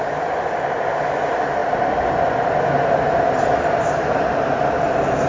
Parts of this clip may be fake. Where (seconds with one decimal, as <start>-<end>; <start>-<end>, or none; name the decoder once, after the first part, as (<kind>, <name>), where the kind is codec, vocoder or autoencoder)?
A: none

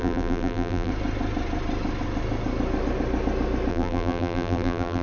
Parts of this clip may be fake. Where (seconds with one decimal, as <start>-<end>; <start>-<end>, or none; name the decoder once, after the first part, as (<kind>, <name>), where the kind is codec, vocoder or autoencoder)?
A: 0.0-0.9 (vocoder, BigVGAN v2); 3.7-5.0

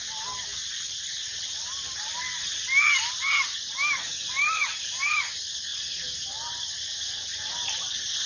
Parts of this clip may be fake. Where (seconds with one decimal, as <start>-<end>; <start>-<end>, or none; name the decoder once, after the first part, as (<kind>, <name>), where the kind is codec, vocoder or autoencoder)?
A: 0.5-2.3 (vocoder, BigVGAN v2); 5.7-7.5

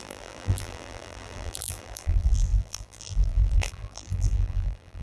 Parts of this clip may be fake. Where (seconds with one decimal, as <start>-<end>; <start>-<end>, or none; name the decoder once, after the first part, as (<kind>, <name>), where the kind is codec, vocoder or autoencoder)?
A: 0.0-5.0 (vocoder, BigVGAN v2)

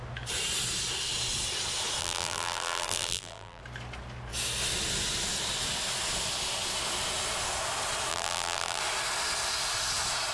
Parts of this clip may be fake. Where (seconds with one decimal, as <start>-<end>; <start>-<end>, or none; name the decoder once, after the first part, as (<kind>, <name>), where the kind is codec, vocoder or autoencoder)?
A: 2.0-3.6 (vocoder, BigVGAN v2); 8.1-8.8